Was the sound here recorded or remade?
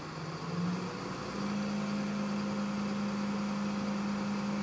recorded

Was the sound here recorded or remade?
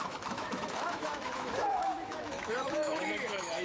remade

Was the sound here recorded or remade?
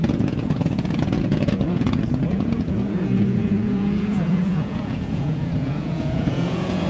remade